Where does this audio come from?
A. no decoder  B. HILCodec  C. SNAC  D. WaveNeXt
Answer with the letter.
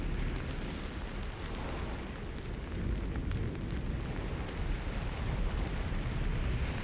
A